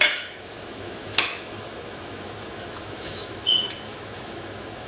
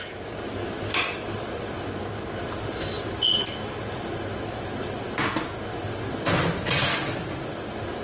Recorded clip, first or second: second